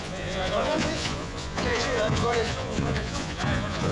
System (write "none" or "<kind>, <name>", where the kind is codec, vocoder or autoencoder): vocoder, Vocos